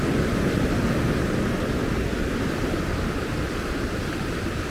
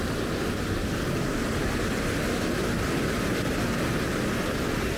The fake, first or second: first